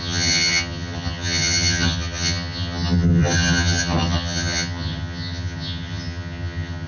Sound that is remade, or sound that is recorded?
remade